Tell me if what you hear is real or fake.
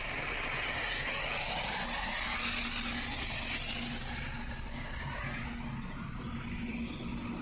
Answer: real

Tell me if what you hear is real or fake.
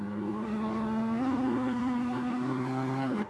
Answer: fake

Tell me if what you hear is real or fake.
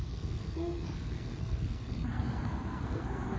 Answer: fake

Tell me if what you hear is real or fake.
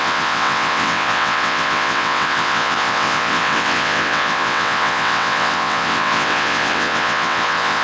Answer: fake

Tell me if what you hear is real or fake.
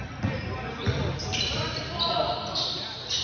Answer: real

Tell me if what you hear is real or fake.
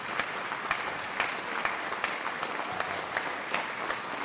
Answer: real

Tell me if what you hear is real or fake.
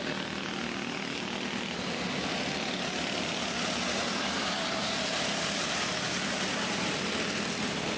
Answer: real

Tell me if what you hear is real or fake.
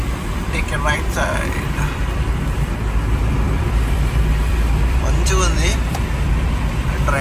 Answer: fake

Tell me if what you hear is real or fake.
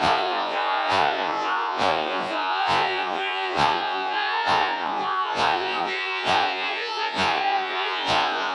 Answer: fake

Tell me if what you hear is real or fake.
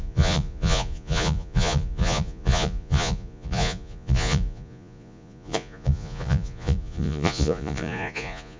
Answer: fake